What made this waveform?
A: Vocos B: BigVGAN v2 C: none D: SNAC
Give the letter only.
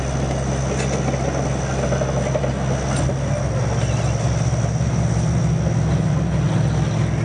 C